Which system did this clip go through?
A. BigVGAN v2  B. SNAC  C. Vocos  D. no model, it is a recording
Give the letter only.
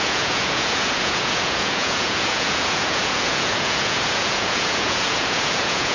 C